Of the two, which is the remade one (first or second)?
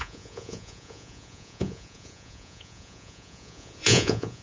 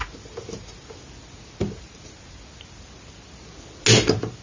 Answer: first